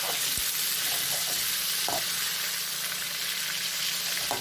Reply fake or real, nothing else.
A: real